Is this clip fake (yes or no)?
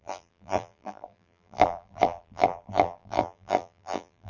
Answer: yes